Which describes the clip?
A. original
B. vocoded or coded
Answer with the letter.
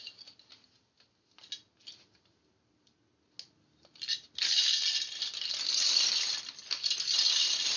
A